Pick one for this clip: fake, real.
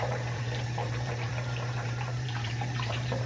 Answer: fake